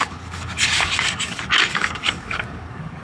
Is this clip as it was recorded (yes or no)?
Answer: no